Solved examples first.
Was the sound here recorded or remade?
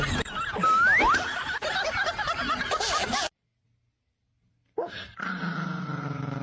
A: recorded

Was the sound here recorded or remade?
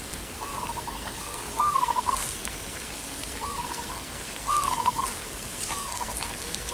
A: remade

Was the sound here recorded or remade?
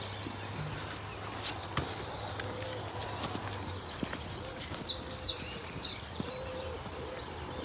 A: recorded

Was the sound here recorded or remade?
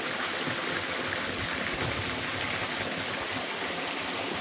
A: recorded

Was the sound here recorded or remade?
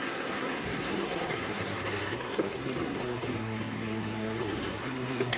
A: remade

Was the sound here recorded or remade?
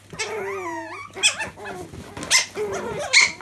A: recorded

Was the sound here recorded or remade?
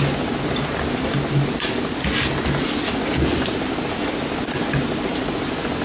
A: recorded